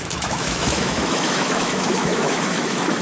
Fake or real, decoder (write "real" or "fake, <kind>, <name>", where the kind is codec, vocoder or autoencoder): fake, autoencoder, DAC-VAE